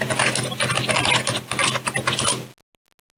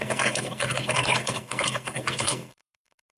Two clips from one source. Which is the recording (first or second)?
first